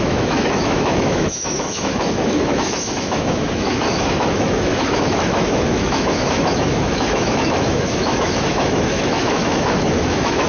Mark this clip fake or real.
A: fake